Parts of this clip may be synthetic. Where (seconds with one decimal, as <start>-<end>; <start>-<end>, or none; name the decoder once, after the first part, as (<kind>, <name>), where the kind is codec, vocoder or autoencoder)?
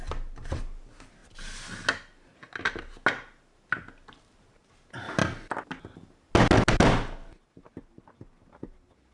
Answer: none